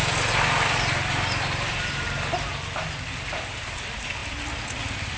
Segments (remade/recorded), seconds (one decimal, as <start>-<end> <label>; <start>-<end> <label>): 0.0-5.2 recorded